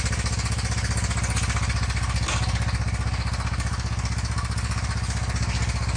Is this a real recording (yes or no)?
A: yes